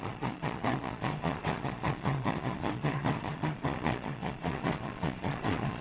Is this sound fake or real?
fake